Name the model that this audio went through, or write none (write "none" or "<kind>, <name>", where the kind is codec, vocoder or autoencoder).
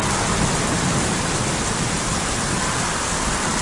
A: none